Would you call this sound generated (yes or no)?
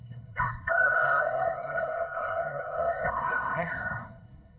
yes